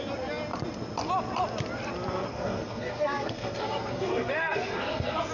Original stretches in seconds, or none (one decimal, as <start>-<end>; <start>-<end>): 0.0-2.3